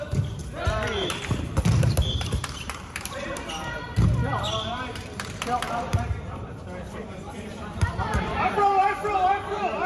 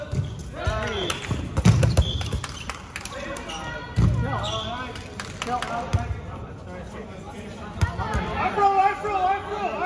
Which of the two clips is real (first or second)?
second